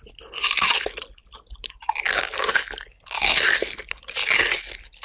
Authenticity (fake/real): real